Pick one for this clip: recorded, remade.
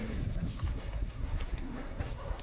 remade